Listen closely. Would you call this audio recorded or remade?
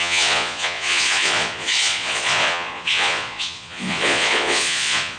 remade